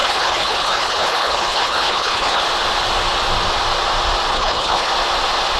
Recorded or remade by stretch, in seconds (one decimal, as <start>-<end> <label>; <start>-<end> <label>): 0.0-2.4 remade; 2.4-4.3 recorded; 4.3-4.9 remade; 4.9-5.6 recorded